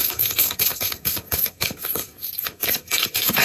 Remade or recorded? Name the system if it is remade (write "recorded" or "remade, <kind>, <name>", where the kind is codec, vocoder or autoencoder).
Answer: remade, codec, SNAC